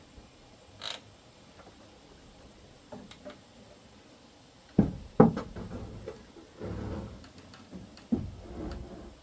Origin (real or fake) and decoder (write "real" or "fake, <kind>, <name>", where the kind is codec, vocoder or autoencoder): real